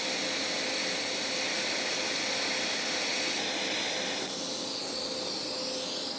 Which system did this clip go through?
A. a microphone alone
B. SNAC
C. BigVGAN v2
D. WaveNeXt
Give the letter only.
A